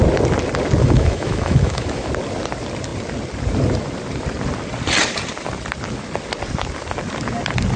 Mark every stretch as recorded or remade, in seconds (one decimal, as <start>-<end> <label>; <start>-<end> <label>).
0.0-0.8 recorded; 0.8-2.1 remade; 2.1-7.8 recorded